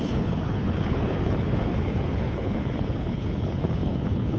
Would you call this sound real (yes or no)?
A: no